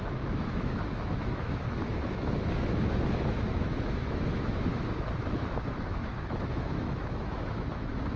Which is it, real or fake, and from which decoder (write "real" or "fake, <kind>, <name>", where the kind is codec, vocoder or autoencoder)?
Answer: fake, autoencoder, DAC-VAE